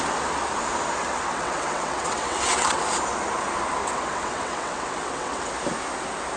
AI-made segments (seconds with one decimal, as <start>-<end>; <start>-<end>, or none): 1.0-2.8; 3.8-5.5